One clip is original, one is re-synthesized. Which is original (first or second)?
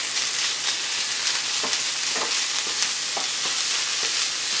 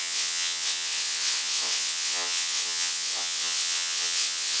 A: first